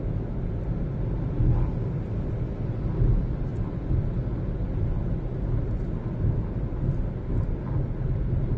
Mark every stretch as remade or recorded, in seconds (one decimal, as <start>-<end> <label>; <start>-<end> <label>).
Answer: 0.0-8.6 recorded